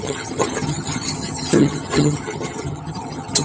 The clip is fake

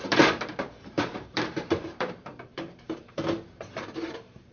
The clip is fake